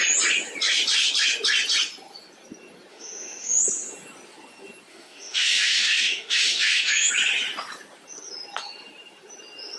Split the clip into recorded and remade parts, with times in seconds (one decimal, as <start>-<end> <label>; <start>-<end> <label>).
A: 0.0-2.9 recorded; 2.9-3.6 remade; 3.6-4.9 recorded; 4.9-7.1 remade; 7.1-9.8 recorded